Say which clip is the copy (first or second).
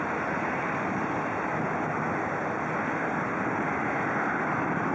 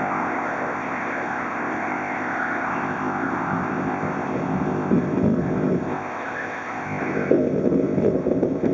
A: second